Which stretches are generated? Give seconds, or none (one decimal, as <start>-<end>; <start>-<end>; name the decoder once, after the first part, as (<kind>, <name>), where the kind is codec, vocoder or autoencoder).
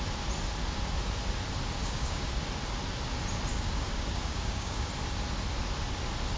1.8-2.3 (codec, DAC); 3.5-4.9